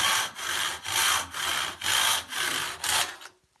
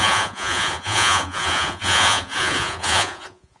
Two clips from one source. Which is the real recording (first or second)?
first